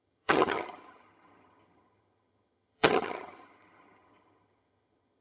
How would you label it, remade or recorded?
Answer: remade